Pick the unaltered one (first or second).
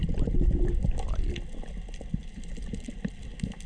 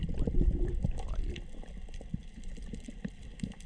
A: first